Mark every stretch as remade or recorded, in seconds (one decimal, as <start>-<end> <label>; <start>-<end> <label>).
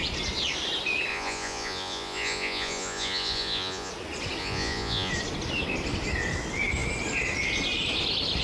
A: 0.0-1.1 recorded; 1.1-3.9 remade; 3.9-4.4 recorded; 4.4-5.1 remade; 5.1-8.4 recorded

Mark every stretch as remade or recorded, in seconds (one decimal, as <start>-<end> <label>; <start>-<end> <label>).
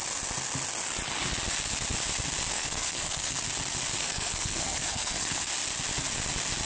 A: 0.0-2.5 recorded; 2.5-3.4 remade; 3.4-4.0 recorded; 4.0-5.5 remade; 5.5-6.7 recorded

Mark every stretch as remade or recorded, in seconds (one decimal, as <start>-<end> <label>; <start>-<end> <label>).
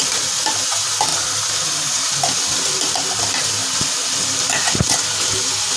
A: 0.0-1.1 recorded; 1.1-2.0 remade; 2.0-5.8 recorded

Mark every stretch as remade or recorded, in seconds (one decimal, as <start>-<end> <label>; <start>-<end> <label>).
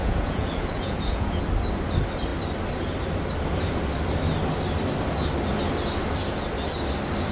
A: 0.0-1.4 remade; 1.4-7.3 recorded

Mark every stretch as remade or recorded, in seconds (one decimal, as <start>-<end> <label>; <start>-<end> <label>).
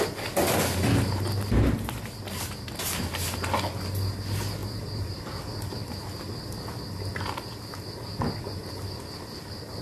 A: 0.0-4.6 recorded; 4.6-5.4 remade; 5.4-9.8 recorded